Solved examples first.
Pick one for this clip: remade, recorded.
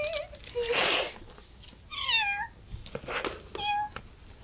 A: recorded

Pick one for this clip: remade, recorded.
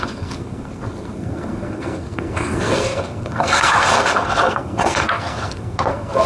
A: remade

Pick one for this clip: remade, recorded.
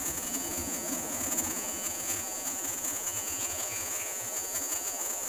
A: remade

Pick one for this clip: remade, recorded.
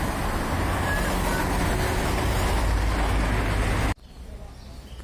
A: recorded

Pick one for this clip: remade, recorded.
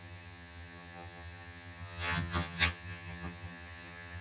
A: remade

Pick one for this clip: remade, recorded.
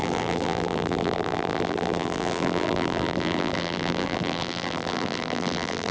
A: remade